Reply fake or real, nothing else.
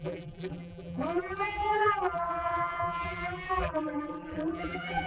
fake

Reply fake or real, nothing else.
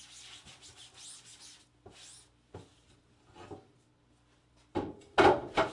real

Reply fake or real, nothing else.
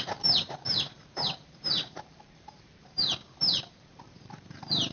fake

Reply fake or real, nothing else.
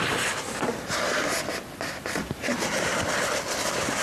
real